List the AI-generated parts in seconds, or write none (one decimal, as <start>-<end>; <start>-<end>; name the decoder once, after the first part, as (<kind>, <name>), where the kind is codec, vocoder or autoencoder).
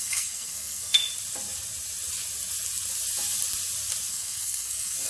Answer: 0.0-1.0 (codec, SNAC); 4.1-5.1